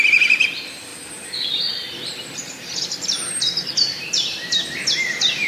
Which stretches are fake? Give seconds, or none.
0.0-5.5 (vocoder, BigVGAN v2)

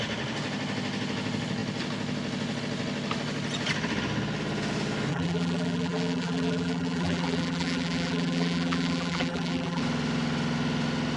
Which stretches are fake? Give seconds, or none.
5.1-9.8 (vocoder, BigVGAN v2)

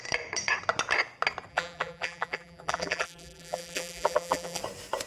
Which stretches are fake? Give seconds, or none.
1.5-4.6 (vocoder, BigVGAN v2)

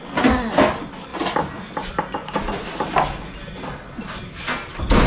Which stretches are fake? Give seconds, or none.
none

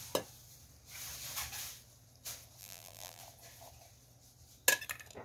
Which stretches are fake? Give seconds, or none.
2.6-3.2 (vocoder, BigVGAN v2)